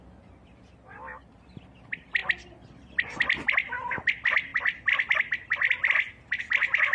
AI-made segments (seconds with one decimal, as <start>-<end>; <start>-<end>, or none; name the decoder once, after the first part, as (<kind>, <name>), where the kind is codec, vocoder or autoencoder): 2.2-4.1 (vocoder, BigVGAN v2); 4.5-5.2